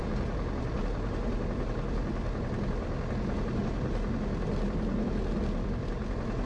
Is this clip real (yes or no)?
yes